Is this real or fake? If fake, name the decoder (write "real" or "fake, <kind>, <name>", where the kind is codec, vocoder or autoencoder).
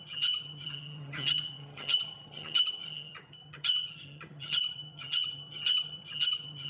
fake, vocoder, HiFi-GAN